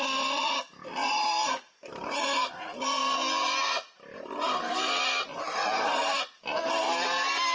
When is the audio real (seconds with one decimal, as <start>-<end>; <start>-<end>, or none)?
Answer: 0.0-7.5